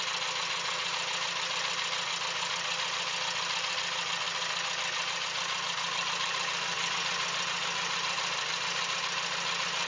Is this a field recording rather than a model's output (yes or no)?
yes